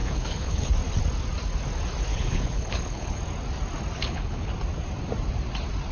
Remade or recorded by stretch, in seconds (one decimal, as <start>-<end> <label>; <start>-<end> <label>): 0.0-0.7 remade; 0.7-2.1 recorded; 2.1-3.2 remade; 3.2-4.0 recorded; 4.0-4.5 remade; 4.5-5.9 recorded